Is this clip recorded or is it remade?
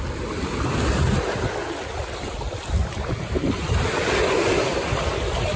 recorded